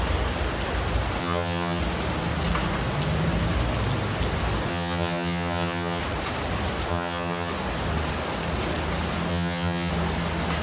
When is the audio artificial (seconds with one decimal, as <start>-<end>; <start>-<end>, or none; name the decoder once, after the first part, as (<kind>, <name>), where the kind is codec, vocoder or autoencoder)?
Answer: 1.2-1.8 (vocoder, HiFi-GAN); 4.7-6.0; 6.9-7.5; 9.3-9.9